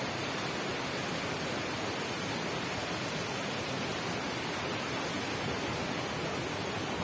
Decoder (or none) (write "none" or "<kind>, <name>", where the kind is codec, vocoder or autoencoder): none